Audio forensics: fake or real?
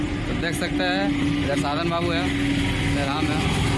real